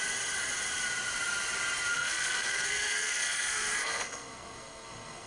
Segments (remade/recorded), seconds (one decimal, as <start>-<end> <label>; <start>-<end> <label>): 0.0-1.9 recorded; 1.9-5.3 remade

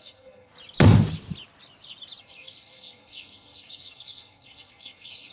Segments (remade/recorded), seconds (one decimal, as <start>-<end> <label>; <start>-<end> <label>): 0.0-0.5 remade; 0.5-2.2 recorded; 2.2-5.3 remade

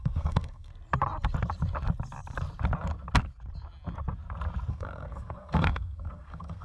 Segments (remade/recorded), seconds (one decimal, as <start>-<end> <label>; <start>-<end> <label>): 0.0-0.7 remade; 0.7-4.7 recorded; 4.7-6.6 remade

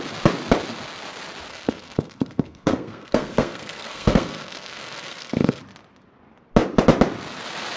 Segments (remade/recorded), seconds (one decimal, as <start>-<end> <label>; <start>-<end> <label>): 0.0-1.5 recorded; 1.5-5.6 remade; 5.6-7.8 recorded

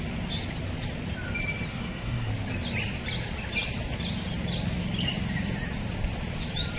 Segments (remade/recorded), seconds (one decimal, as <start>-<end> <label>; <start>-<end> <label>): 0.0-1.7 recorded; 1.7-2.3 remade; 2.3-6.8 recorded

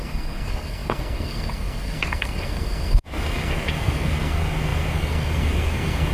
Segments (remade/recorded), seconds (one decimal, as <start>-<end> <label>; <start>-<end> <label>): 0.0-6.1 remade

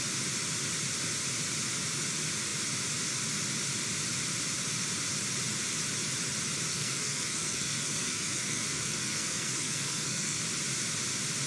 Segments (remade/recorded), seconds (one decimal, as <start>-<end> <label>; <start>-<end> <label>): 0.0-6.7 recorded; 6.7-10.4 remade; 10.4-11.5 recorded

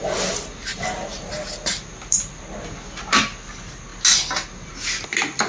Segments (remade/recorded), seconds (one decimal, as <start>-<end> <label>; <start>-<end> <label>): 0.0-5.5 recorded